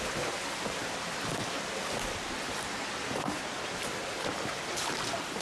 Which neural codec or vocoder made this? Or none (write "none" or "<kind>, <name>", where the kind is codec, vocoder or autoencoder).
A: none